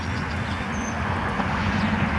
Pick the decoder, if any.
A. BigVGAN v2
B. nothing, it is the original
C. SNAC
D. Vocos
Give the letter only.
D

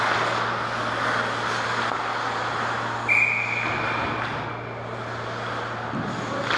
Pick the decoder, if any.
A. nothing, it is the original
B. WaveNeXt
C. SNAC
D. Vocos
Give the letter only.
A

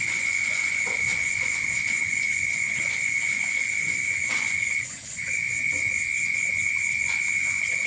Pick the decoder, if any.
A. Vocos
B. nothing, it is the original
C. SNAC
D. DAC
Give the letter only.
A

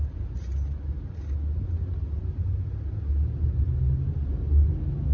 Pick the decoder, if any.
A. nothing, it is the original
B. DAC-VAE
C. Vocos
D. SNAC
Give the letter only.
A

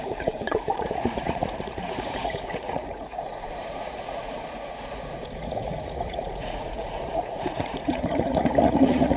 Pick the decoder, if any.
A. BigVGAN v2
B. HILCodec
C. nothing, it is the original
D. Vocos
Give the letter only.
D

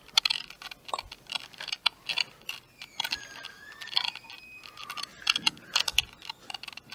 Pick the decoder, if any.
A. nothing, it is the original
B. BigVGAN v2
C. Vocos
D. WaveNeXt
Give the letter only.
A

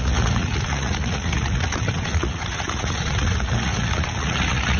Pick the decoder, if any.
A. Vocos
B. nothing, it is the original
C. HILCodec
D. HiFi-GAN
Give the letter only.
A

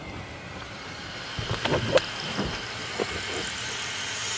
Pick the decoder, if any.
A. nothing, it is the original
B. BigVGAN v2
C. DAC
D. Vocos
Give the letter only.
A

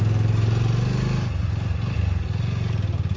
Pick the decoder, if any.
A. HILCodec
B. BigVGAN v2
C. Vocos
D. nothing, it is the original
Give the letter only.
D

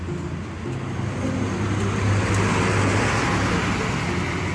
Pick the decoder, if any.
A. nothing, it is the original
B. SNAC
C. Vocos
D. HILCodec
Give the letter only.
A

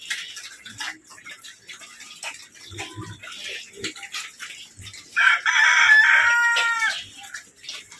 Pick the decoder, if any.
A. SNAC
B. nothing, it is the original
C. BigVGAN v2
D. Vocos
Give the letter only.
B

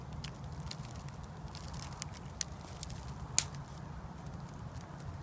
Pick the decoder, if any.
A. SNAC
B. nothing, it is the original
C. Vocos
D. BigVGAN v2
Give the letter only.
B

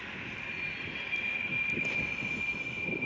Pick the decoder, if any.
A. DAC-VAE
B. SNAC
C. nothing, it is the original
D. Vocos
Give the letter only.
C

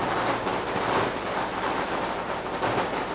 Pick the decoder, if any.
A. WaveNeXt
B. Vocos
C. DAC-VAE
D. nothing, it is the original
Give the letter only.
D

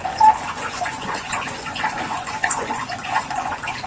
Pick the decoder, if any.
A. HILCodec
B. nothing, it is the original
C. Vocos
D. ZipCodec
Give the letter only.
C